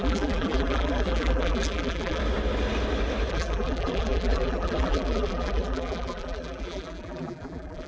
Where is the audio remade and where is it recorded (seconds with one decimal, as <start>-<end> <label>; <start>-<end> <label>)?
0.0-2.2 remade; 2.2-3.3 recorded; 3.3-7.9 remade